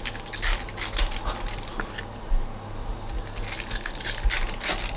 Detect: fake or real real